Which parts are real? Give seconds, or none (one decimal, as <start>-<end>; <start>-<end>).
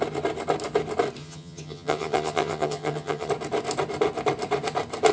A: 0.0-1.2; 3.3-5.1